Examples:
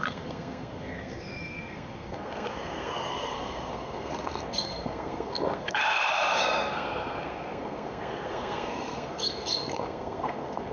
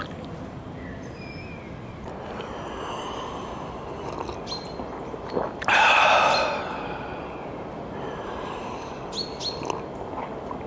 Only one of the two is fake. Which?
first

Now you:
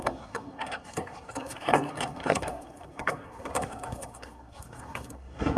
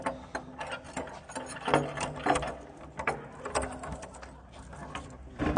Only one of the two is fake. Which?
first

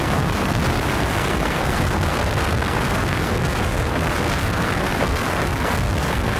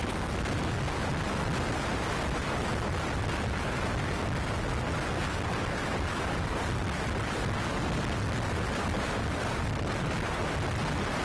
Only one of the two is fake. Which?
first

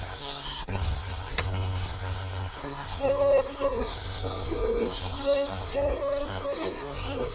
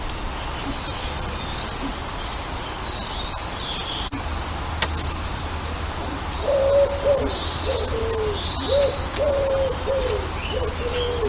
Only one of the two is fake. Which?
first